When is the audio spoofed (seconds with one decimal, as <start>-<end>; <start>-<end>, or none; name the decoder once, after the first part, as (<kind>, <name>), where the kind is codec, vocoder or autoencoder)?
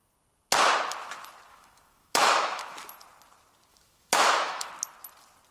1.5-2.6 (autoencoder, DAC-VAE); 3.7-4.7